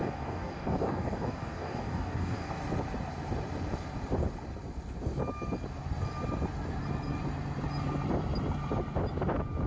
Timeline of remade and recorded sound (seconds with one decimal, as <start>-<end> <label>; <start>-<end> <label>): 0.0-2.5 remade; 2.5-9.7 recorded